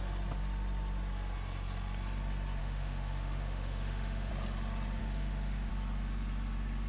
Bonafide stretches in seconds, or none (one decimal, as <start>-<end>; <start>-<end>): 0.0-2.6; 4.3-5.0; 5.7-6.9